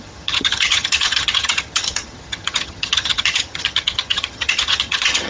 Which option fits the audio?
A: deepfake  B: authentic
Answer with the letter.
A